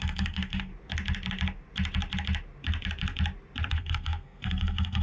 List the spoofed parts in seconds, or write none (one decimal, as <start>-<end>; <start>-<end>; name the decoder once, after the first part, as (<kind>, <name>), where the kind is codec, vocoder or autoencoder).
0.0-0.7 (codec, SNAC); 3.7-5.0